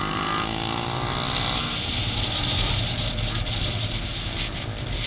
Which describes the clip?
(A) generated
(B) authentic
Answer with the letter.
B